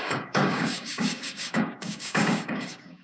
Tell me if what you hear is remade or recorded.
remade